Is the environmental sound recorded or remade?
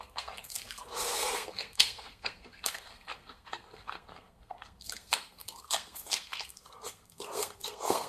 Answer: remade